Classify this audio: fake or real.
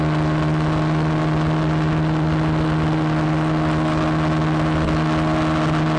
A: real